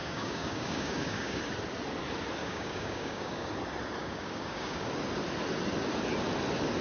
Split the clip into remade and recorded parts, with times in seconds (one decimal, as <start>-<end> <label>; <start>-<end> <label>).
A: 0.0-1.4 remade; 1.4-2.4 recorded; 2.4-3.5 remade; 3.5-4.0 recorded; 4.0-4.9 remade; 4.9-6.8 recorded